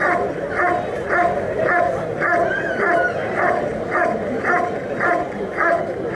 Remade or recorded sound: recorded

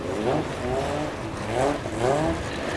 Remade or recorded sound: recorded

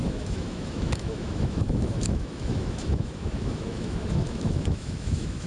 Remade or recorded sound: remade